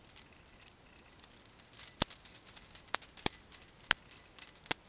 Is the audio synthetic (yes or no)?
no